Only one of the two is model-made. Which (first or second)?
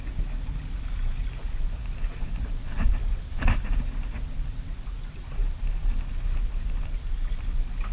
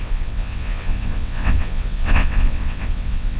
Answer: second